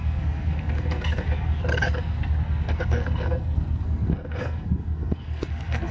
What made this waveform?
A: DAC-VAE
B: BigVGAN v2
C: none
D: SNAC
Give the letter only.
D